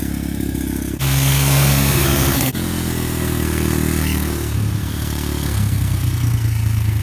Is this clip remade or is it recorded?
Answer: remade